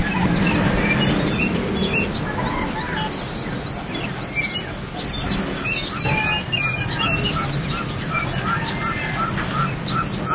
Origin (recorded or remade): recorded